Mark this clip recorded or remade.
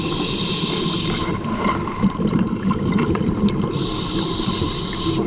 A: remade